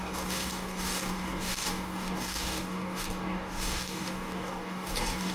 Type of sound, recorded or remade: remade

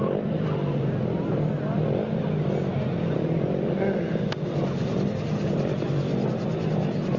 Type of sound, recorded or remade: recorded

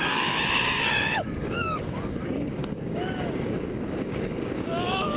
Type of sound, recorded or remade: remade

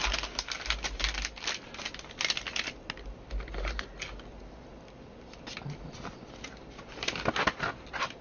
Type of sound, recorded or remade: recorded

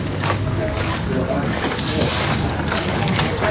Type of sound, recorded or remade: remade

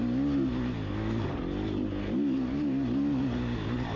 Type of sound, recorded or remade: recorded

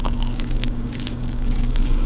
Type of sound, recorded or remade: remade